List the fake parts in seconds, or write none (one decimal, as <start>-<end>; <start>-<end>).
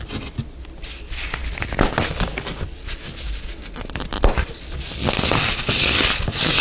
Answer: none